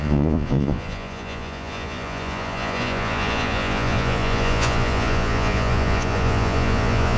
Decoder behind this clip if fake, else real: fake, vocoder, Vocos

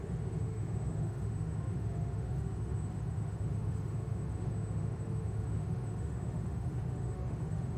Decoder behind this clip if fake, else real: fake, autoencoder, DAC-VAE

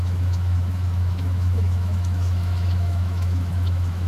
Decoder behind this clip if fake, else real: fake, autoencoder, DAC-VAE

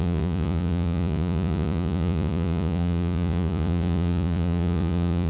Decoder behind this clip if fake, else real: fake, vocoder, Vocos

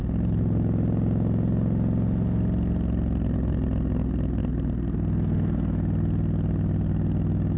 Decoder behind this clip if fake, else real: real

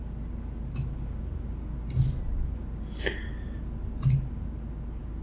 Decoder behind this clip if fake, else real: real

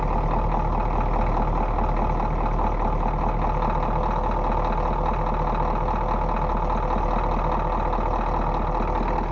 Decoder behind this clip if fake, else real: real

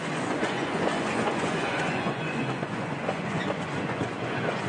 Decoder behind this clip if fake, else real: fake, vocoder, Vocos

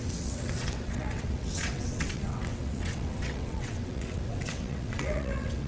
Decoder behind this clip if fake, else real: fake, vocoder, WaveNeXt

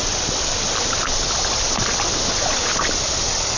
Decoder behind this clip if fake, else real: real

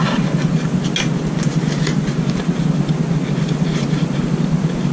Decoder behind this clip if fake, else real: real